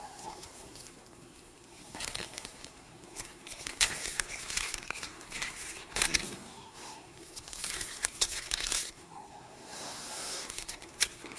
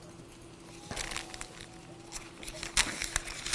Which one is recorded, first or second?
second